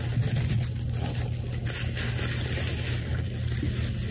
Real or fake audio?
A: real